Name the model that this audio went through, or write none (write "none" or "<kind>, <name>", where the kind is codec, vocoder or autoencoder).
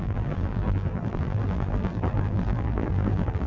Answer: vocoder, BigVGAN v2